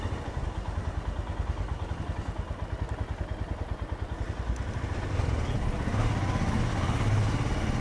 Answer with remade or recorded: recorded